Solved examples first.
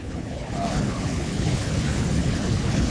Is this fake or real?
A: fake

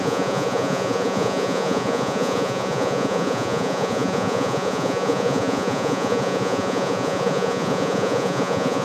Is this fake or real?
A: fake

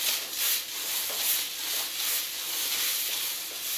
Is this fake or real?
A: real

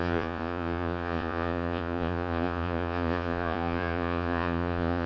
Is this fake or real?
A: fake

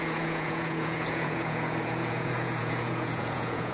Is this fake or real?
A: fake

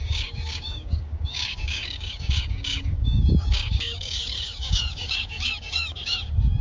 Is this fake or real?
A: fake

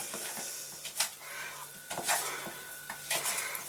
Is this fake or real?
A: real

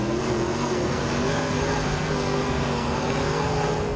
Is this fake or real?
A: fake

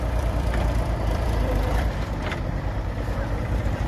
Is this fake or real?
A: fake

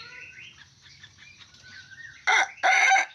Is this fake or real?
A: real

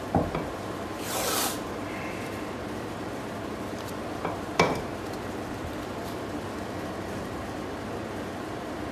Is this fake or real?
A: fake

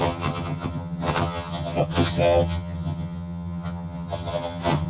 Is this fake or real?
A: fake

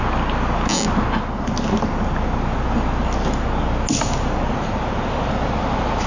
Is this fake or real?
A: real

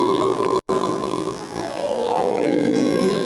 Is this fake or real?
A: fake